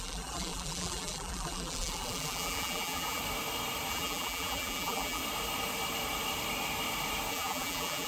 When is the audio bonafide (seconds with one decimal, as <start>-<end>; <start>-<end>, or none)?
3.2-3.9; 5.2-7.3